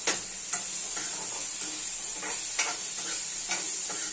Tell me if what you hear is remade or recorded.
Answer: recorded